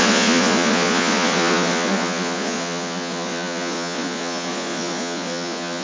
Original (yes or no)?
no